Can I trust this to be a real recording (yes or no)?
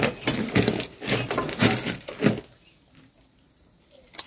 yes